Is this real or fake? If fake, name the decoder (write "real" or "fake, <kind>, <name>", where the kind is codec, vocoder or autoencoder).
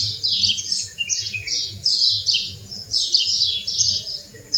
fake, vocoder, Vocos